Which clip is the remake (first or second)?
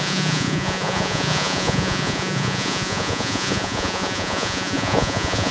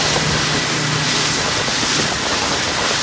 first